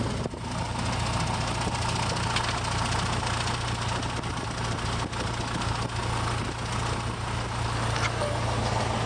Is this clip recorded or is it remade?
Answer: recorded